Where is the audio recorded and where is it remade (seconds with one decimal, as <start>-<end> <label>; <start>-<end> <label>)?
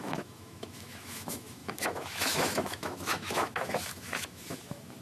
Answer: 0.0-5.0 remade